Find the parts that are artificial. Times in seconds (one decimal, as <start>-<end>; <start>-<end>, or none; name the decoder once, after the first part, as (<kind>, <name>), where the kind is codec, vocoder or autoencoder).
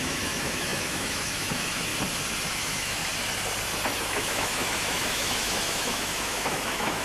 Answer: 0.0-1.9 (autoencoder, DAC-VAE); 2.5-3.0; 4.0-7.0